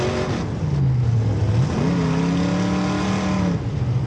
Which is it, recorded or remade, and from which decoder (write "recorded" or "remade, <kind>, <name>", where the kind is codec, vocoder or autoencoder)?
recorded